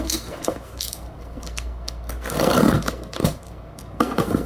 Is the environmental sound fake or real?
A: fake